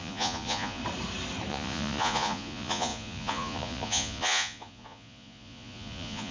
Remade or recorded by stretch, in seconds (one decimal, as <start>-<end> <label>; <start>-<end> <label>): 0.0-0.8 remade; 0.8-1.5 recorded; 1.5-6.3 remade

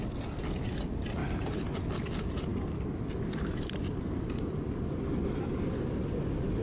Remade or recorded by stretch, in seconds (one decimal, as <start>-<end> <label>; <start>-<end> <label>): 0.0-6.6 recorded

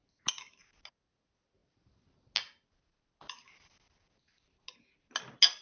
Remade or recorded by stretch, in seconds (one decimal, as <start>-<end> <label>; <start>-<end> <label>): 0.0-5.6 recorded

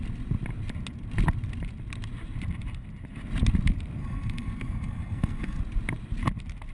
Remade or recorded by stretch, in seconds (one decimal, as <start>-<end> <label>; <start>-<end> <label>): 0.0-4.0 recorded; 4.0-5.6 remade; 5.6-6.7 recorded